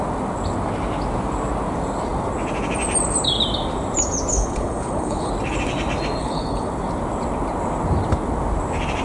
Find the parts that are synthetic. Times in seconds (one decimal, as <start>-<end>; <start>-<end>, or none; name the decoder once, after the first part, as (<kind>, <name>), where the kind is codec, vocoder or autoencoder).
4.3-5.3 (codec, HILCodec); 6.2-6.7